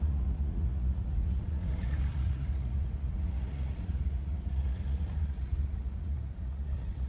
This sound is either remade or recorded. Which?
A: remade